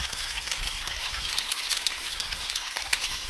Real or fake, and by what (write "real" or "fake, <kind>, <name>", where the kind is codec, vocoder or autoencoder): fake, codec, SNAC